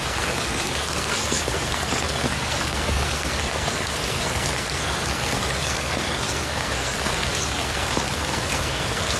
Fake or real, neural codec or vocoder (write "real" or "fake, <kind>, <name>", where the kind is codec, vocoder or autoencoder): fake, codec, SNAC